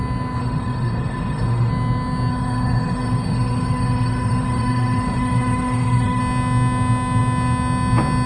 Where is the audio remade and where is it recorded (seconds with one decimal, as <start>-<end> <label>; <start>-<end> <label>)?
0.0-0.4 recorded; 0.4-1.7 remade; 1.7-2.3 recorded; 2.3-6.2 remade; 6.2-8.3 recorded